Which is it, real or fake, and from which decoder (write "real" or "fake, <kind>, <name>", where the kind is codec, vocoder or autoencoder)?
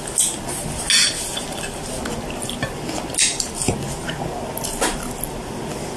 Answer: real